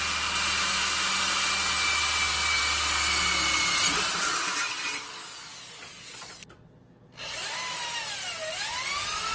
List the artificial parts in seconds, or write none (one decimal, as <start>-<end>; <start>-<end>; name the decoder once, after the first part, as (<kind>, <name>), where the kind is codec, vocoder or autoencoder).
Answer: none